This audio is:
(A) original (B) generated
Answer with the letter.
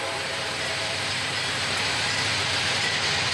B